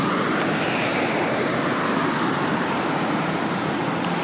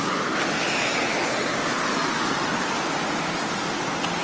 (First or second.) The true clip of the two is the second